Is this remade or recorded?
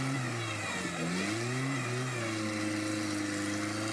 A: recorded